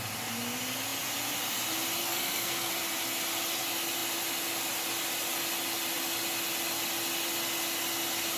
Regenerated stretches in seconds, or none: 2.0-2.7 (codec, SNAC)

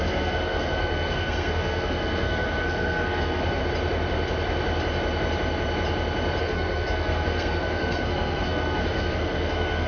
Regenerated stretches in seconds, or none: 0.0-3.6 (codec, SNAC); 6.4-9.9